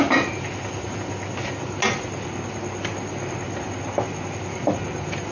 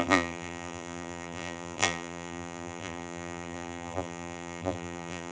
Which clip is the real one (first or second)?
first